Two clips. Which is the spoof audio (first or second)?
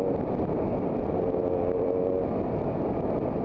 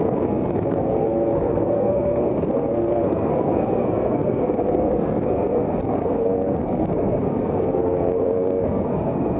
second